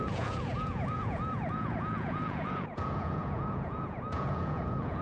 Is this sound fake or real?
fake